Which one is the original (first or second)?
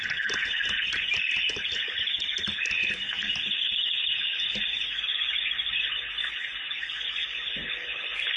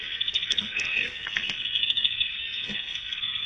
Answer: first